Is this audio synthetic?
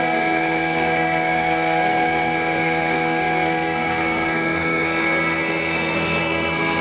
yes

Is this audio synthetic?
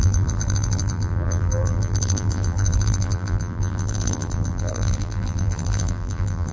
yes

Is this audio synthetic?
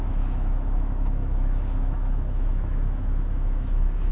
yes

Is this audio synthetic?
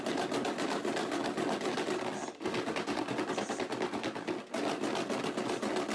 no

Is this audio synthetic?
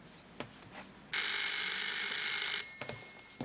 no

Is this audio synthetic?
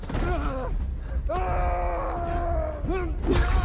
no